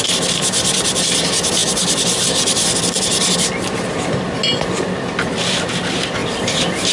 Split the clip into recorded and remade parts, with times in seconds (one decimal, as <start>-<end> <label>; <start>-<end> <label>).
0.0-6.9 recorded